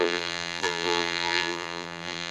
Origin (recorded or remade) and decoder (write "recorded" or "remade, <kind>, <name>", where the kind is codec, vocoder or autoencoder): remade, vocoder, BigVGAN v2